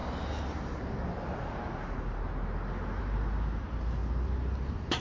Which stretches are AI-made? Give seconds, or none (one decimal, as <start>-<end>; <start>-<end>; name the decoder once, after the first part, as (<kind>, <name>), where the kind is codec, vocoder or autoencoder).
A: 3.0-4.0 (vocoder, BigVGAN v2)

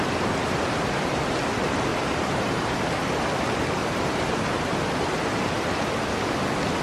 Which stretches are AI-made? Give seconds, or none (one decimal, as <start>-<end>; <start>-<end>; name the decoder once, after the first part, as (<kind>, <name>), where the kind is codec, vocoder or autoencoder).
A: 0.4-1.3 (vocoder, BigVGAN v2); 1.9-2.9; 3.8-5.0